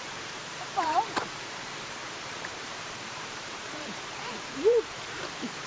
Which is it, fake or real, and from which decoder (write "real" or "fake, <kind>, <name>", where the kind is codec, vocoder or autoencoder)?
fake, vocoder, BigVGAN v2